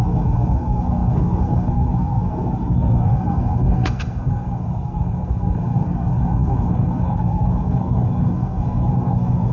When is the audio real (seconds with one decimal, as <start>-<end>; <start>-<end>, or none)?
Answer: none